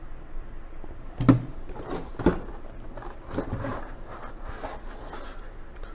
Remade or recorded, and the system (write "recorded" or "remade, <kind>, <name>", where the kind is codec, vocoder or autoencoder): recorded